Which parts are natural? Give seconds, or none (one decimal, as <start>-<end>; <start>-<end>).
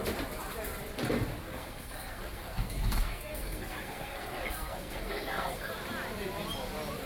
0.0-1.4; 5.7-7.1